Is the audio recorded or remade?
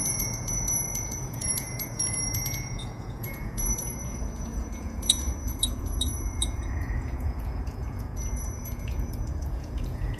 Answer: remade